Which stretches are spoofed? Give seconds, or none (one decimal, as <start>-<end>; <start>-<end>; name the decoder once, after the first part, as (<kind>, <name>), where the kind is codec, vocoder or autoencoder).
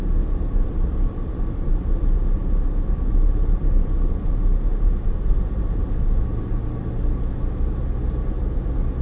0.0-4.5 (vocoder, BigVGAN v2)